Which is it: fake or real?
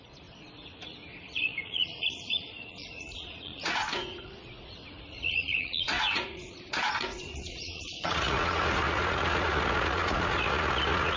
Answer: fake